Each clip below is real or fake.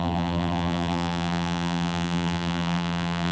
fake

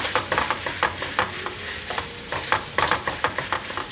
fake